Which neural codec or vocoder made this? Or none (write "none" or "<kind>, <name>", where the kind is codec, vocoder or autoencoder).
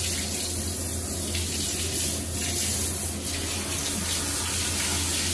none